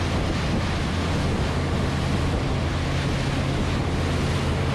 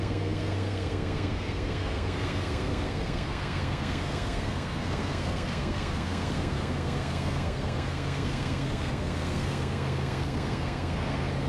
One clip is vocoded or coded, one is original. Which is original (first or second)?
first